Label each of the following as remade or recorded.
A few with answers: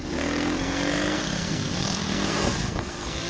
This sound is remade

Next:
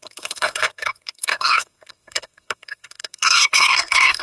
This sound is remade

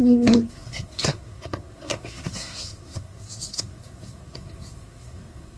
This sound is remade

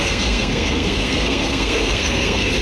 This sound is remade